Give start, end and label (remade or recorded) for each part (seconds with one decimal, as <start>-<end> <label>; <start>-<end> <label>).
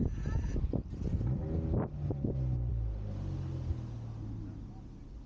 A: 0.0-5.3 recorded